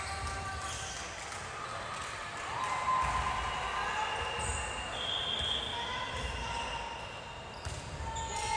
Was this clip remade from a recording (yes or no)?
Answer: no